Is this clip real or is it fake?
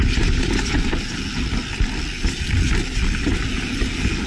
real